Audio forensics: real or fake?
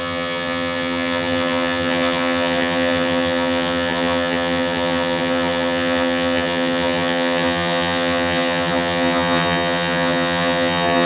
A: fake